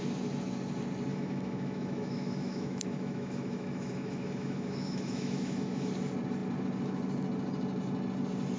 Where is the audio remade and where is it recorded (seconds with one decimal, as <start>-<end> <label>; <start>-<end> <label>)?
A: 0.0-1.1 recorded; 1.1-5.9 remade; 5.9-8.6 recorded